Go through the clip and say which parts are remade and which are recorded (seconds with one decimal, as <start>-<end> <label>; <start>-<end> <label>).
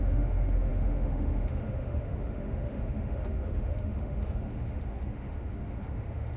0.0-6.4 remade